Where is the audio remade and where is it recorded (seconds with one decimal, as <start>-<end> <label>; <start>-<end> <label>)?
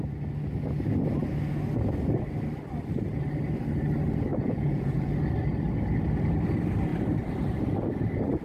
0.0-4.3 recorded; 4.3-5.1 remade; 5.1-8.4 recorded